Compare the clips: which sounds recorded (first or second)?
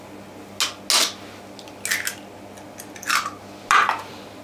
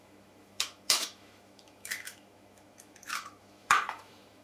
first